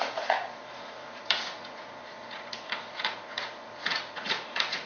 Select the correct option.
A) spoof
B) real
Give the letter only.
A